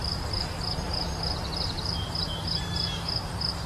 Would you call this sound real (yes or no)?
no